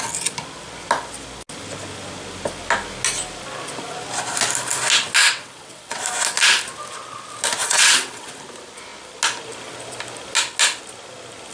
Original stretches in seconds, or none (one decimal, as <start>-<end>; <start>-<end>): 0.0-5.2; 6.0-7.6; 8.3-11.5